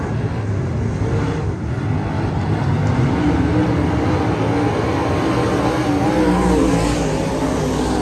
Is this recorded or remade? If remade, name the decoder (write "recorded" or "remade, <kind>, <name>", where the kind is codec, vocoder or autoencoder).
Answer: recorded